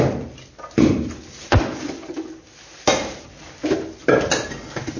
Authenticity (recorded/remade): recorded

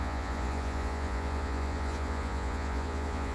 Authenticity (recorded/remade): remade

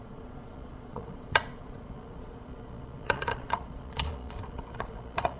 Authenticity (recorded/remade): remade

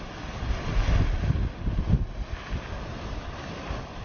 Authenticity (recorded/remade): recorded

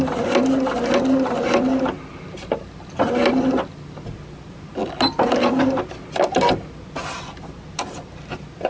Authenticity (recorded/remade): recorded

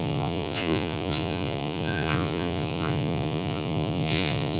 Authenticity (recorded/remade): remade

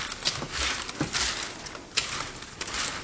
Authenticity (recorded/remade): recorded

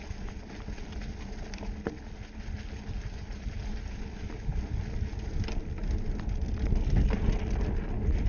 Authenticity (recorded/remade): recorded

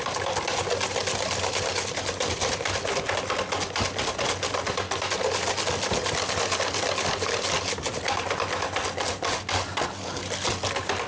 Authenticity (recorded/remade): recorded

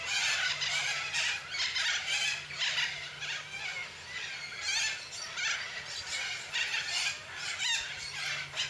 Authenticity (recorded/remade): recorded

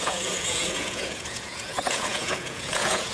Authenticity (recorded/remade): remade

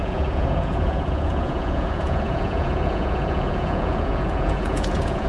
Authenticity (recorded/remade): remade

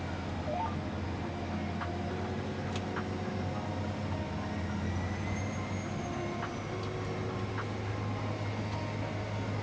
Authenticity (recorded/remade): recorded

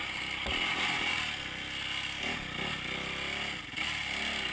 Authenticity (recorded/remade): recorded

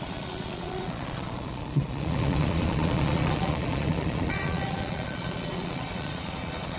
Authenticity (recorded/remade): remade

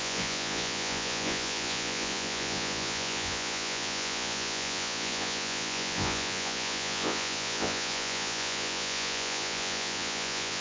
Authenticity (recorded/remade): remade